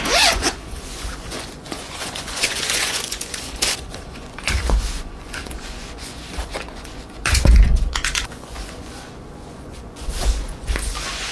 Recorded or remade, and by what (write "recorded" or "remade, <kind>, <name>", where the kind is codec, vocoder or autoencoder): remade, vocoder, Vocos